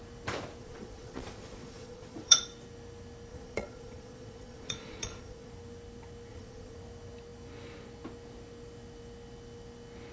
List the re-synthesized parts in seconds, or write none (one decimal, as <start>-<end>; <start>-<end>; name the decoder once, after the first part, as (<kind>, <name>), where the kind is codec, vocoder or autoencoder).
0.6-2.4 (vocoder, Vocos); 3.3-5.5; 6.3-6.8